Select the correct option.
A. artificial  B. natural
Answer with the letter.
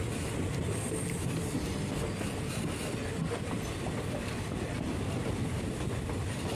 B